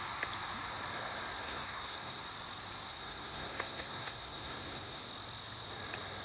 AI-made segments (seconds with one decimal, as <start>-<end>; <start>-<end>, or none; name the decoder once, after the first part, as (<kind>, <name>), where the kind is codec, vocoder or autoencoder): 1.4-2.2 (codec, SNAC); 2.9-5.0